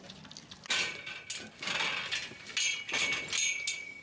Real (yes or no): yes